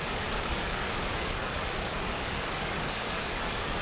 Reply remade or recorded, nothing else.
remade